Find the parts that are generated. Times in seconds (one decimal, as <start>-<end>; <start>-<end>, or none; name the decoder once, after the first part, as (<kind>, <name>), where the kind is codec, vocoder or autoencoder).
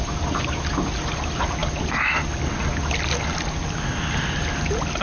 none